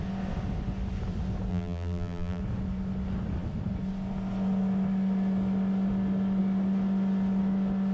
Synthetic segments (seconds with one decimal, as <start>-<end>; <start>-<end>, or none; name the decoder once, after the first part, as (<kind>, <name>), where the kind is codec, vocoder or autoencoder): 1.5-2.4 (vocoder, BigVGAN v2)